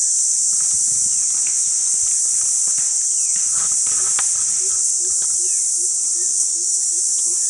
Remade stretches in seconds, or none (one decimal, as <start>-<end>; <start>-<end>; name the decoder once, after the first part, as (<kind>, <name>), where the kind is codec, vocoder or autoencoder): 6.3-7.0 (codec, HILCodec)